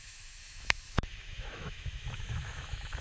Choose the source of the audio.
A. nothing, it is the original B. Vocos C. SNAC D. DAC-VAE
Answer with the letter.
D